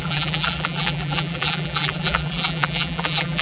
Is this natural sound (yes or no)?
no